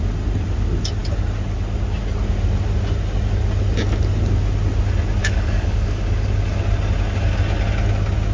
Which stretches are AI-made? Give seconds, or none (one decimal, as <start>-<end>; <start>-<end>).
5.2-6.0

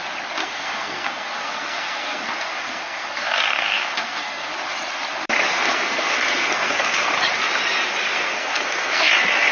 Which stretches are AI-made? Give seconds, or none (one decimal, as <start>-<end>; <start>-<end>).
0.4-4.5; 5.5-7.1; 8.1-9.1

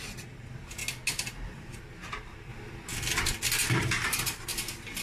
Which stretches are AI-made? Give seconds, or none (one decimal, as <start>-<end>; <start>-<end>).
0.0-0.8; 1.4-2.5; 3.7-4.5

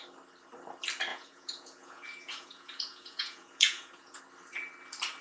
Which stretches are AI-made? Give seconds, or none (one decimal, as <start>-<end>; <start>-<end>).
1.1-4.2